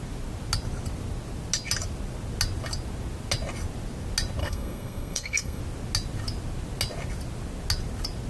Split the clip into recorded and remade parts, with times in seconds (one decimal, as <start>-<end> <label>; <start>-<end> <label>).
0.0-4.4 recorded; 4.4-5.6 remade; 5.6-8.3 recorded